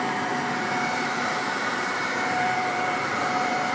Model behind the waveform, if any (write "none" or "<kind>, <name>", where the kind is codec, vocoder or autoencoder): vocoder, BigVGAN v2